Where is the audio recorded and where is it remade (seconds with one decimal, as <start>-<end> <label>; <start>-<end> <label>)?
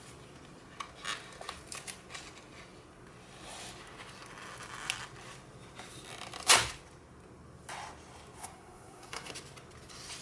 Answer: 0.0-8.4 recorded; 8.4-9.3 remade; 9.3-10.2 recorded